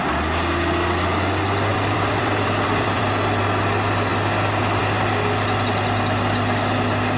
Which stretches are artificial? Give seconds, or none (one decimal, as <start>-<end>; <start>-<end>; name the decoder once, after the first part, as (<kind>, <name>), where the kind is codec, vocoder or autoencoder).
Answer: 1.7-3.0 (vocoder, BigVGAN v2)